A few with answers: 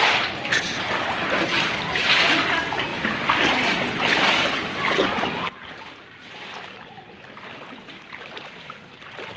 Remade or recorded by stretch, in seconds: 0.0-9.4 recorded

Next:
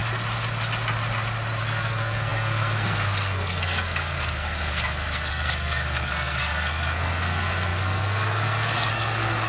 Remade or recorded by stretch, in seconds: 0.0-1.6 recorded; 1.6-9.5 remade

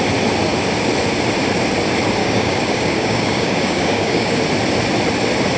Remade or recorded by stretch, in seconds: 0.0-2.2 recorded; 2.2-4.4 remade; 4.4-5.6 recorded

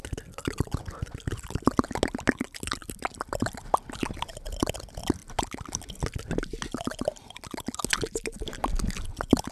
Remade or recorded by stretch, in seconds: 0.0-9.5 recorded

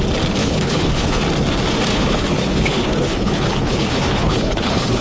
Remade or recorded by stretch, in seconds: 0.0-0.4 recorded; 0.4-1.2 remade; 1.2-1.9 recorded; 1.9-5.0 remade

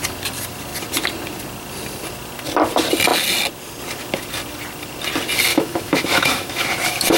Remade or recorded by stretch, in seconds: 0.0-5.5 recorded; 5.5-6.7 remade; 6.7-7.2 recorded

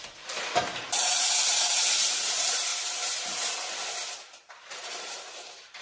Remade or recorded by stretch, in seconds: 0.0-2.7 remade; 2.7-4.1 recorded; 4.1-5.8 remade